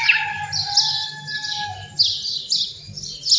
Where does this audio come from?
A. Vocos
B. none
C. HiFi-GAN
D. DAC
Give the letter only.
B